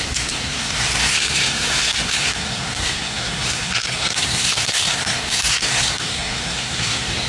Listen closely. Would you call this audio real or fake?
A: fake